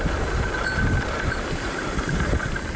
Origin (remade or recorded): recorded